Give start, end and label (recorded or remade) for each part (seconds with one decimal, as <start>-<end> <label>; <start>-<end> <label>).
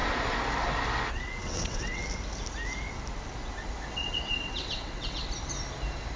0.0-1.1 recorded; 1.1-2.0 remade; 2.0-3.9 recorded; 3.9-5.2 remade; 5.2-6.2 recorded